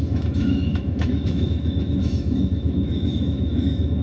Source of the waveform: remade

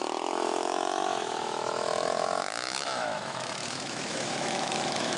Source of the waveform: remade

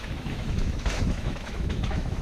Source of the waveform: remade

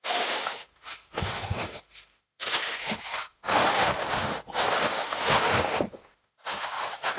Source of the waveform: remade